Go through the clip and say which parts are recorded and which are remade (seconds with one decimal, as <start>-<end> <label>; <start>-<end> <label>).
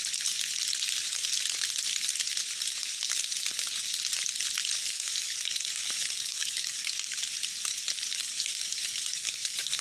0.0-4.8 recorded; 4.8-7.2 remade; 7.2-8.1 recorded; 8.1-9.8 remade